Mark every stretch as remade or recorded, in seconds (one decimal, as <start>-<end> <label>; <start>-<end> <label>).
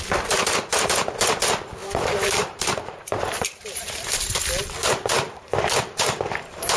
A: 0.0-1.8 recorded; 1.8-4.2 remade; 4.2-4.8 recorded; 4.8-6.2 remade; 6.2-6.8 recorded